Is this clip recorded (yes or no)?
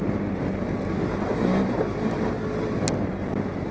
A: yes